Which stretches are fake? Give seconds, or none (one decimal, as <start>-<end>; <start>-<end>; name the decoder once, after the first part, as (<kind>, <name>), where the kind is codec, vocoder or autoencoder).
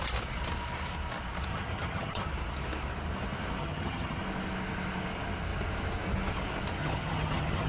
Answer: 1.5-2.3 (vocoder, HiFi-GAN); 3.6-4.2; 6.8-7.7